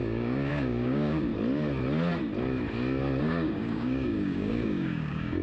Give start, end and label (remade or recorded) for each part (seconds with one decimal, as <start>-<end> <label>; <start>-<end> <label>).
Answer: 0.0-1.3 remade; 1.3-3.2 recorded; 3.2-5.4 remade

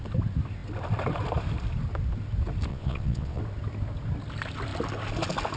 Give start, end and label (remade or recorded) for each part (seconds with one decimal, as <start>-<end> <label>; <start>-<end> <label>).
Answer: 0.0-2.7 recorded; 2.7-3.4 remade; 3.4-5.6 recorded

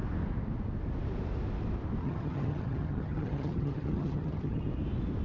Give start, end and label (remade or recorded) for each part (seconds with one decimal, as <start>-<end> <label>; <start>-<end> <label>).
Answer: 0.0-2.0 recorded; 2.0-4.7 remade; 4.7-5.2 recorded

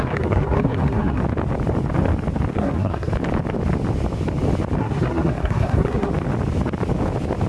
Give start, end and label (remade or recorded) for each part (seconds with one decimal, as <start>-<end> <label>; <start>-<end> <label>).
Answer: 0.0-1.2 remade; 1.2-2.5 recorded; 2.5-3.1 remade; 3.1-4.8 recorded; 4.8-6.1 remade; 6.1-7.5 recorded

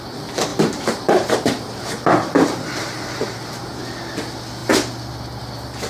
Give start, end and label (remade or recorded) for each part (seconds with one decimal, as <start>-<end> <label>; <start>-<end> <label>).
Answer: 0.0-0.5 recorded; 0.5-3.8 remade; 3.8-5.9 recorded